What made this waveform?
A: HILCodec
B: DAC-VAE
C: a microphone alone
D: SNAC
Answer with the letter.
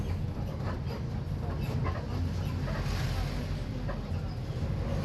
C